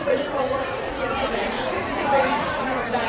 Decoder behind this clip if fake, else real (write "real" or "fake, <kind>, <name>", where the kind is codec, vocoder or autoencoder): fake, vocoder, Vocos